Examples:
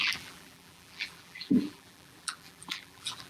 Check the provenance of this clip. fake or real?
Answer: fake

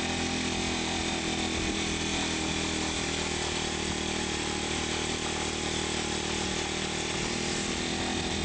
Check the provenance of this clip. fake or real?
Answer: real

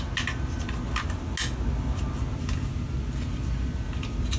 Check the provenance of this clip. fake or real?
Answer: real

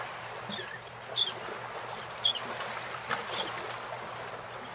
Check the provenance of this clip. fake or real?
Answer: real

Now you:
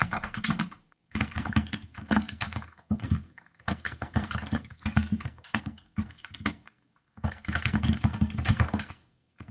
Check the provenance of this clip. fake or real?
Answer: fake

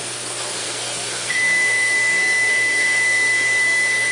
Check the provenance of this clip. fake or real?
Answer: fake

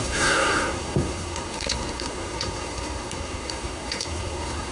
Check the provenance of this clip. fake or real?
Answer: fake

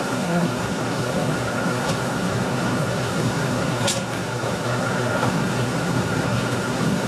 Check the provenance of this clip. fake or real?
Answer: fake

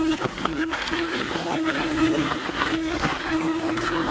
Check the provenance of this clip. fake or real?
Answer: fake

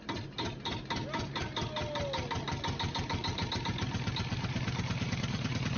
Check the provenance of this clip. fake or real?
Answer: real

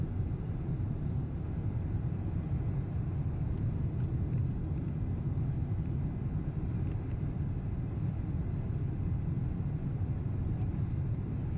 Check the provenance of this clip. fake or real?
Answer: real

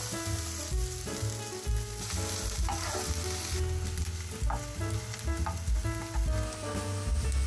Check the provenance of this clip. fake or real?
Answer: real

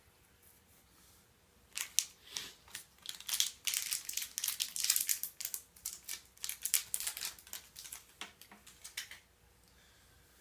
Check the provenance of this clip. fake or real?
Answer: real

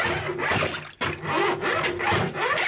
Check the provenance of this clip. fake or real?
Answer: real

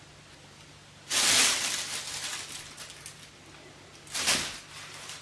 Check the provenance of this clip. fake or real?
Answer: real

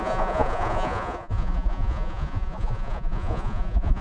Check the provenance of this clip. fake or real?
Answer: fake